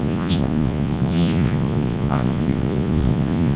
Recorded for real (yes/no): no